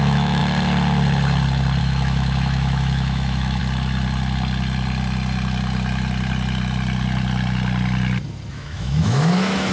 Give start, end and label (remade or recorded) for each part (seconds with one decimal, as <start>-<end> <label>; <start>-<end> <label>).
0.0-0.4 remade; 0.4-1.8 recorded; 1.8-3.6 remade; 3.6-8.5 recorded; 8.5-9.7 remade